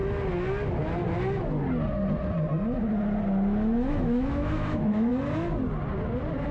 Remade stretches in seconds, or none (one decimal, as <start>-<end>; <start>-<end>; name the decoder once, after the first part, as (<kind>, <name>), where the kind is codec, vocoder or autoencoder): 3.9-5.1 (autoencoder, DAC-VAE)